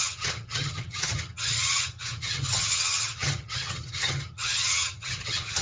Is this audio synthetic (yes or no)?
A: yes